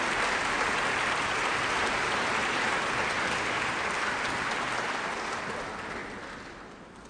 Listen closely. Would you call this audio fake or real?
real